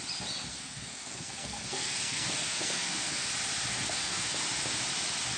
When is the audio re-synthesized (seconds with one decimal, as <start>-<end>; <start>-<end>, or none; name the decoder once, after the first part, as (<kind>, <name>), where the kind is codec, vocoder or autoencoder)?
0.5-3.3 (codec, SNAC); 3.7-4.4